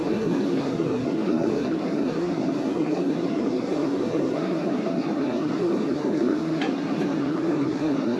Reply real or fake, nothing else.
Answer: fake